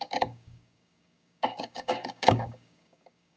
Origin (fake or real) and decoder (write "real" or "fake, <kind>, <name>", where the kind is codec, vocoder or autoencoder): fake, codec, DAC